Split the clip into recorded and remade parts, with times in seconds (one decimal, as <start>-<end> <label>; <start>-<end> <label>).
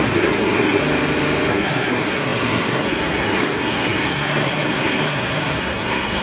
0.0-0.8 remade; 0.8-1.5 recorded; 1.5-6.2 remade